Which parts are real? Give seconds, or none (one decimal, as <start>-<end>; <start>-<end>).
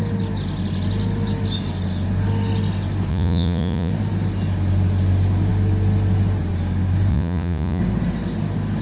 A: 0.0-3.1; 3.9-7.1; 7.8-8.8